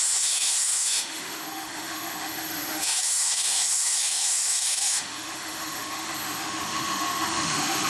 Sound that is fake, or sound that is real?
fake